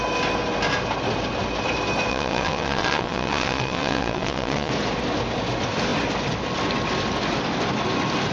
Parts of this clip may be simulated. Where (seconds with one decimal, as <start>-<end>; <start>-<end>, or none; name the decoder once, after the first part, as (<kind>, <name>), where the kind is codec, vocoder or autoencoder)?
2.1-4.7 (vocoder, WaveNeXt)